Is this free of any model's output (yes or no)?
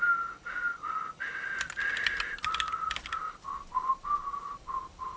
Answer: yes